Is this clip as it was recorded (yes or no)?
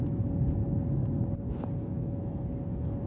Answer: yes